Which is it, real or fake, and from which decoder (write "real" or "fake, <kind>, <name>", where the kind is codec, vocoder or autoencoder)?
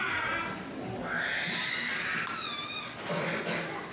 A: real